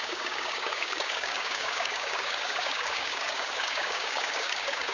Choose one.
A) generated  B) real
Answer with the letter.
A